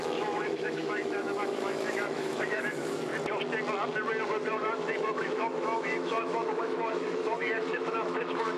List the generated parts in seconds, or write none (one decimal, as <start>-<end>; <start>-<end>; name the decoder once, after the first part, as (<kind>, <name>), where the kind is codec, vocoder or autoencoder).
0.0-3.1 (autoencoder, DAC-VAE); 4.5-8.6

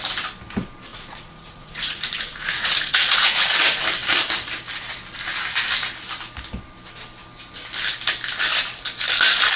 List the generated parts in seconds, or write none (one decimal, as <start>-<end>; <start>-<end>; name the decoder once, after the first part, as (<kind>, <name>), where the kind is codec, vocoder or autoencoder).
0.9-3.4 (vocoder, Vocos)

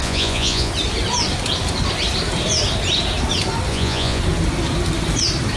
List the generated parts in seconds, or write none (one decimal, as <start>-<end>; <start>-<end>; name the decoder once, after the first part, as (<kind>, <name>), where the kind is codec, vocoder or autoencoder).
0.0-0.7 (vocoder, Vocos); 3.7-4.2

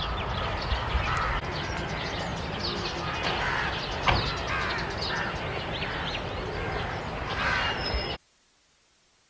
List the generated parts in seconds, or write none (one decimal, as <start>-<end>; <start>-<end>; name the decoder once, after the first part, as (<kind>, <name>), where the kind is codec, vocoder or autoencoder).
none

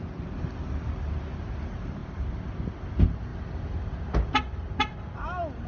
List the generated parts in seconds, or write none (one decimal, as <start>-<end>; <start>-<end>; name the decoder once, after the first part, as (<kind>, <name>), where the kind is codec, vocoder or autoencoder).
none

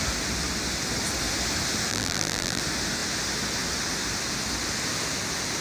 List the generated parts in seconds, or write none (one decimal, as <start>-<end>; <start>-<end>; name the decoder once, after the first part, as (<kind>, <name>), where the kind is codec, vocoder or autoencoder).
1.9-2.6 (vocoder, BigVGAN v2)

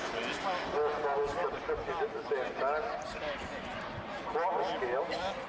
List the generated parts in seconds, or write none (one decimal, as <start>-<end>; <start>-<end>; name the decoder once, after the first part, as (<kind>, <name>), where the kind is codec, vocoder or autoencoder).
none

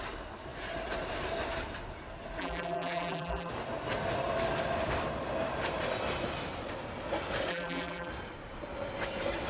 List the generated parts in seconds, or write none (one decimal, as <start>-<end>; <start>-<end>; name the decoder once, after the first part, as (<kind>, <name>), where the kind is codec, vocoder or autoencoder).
2.4-3.5 (vocoder, BigVGAN v2); 7.5-8.1